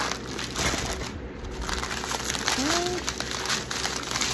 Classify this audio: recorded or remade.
recorded